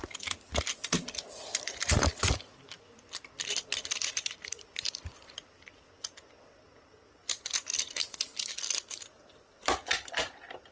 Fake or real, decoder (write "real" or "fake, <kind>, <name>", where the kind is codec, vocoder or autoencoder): real